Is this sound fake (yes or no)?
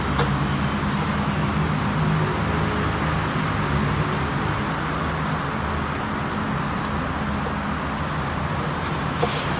no